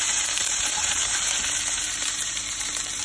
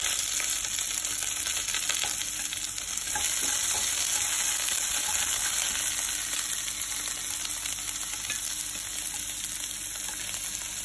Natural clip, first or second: second